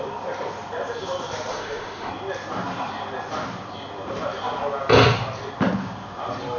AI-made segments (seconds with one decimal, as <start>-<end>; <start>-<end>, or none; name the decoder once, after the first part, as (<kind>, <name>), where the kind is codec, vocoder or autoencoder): 1.5-2.1 (autoencoder, DAC-VAE)